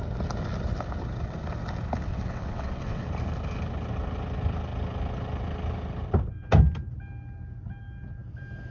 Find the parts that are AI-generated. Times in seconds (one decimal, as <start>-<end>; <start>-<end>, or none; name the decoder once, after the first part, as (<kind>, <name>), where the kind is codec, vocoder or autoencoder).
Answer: 2.1-3.0 (vocoder, WaveNeXt)